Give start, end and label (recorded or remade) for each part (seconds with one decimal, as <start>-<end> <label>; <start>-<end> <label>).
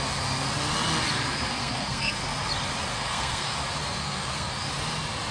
0.0-1.6 recorded; 1.6-2.2 remade; 2.2-2.9 recorded; 2.9-3.5 remade; 3.5-4.0 recorded; 4.0-4.5 remade; 4.5-5.3 recorded